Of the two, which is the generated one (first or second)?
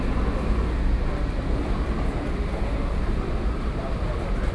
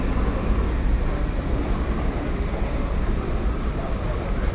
second